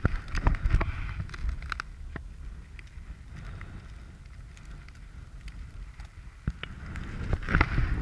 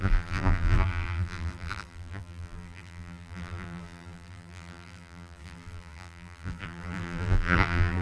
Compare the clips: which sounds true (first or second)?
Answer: first